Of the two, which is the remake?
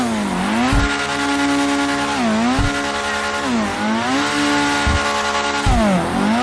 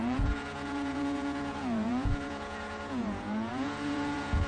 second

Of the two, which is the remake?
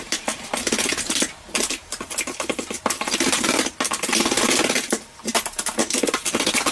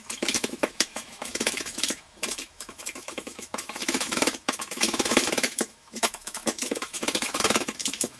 second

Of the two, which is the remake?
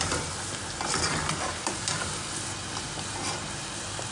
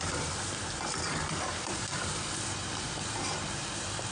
second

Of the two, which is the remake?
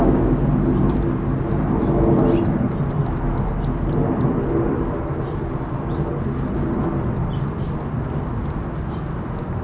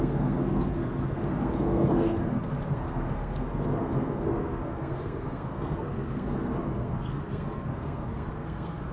second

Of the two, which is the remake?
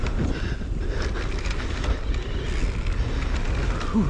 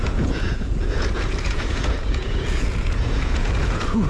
second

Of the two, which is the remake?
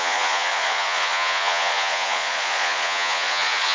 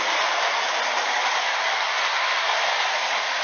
first